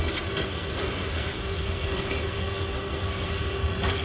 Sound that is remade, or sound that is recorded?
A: remade